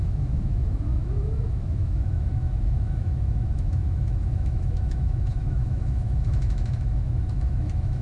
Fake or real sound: fake